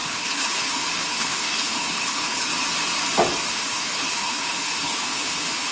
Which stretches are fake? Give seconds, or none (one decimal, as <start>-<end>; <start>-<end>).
0.0-2.5; 3.5-5.7

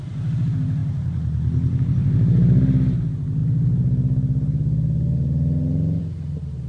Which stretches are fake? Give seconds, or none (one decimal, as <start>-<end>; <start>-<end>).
none

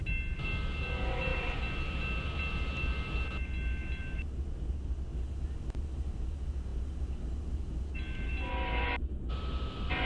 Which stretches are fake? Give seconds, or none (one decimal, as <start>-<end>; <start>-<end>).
none

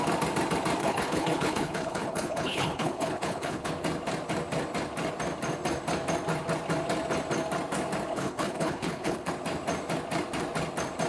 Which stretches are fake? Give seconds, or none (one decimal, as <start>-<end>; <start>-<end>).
0.8-3.7; 8.1-9.3

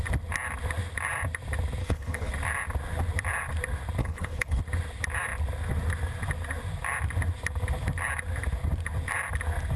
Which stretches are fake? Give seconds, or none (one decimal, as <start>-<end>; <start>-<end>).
1.8-2.3; 4.0-4.6

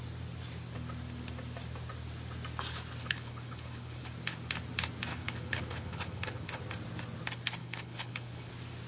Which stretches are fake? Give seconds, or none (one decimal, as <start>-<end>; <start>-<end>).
3.0-4.0; 5.1-6.6; 7.6-8.5

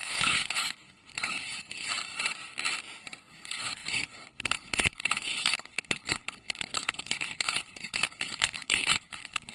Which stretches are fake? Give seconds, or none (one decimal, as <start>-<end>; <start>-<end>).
0.0-1.9; 3.3-9.5

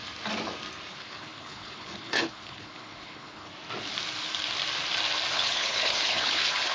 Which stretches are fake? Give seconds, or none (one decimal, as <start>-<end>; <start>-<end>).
0.9-3.5; 5.3-6.7